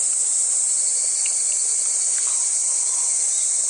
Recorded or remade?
recorded